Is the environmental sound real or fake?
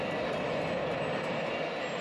real